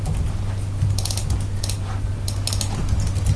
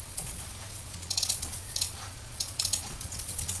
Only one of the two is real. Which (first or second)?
first